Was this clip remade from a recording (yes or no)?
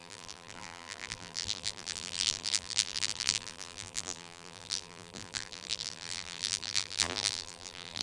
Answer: yes